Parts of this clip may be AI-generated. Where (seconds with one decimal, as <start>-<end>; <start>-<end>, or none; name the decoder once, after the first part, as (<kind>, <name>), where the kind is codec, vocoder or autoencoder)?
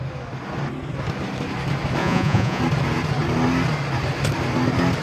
2.0-2.6 (vocoder, Vocos)